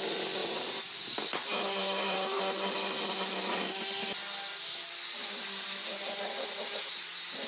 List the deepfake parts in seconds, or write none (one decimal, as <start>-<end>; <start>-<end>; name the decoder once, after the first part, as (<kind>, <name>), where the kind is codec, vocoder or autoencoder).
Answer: 0.4-2.4 (vocoder, BigVGAN v2); 5.2-7.5